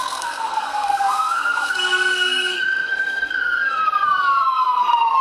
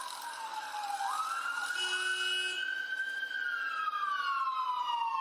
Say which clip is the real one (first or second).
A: second